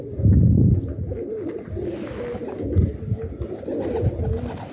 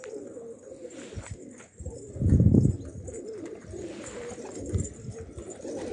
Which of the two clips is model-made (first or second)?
second